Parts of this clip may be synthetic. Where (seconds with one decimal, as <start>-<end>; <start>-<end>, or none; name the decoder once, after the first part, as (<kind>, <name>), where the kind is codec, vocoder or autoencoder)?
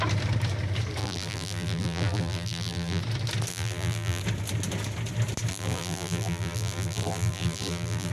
1.0-3.0 (vocoder, BigVGAN v2); 3.5-4.2; 5.5-8.1